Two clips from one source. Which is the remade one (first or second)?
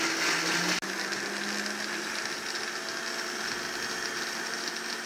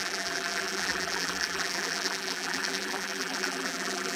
second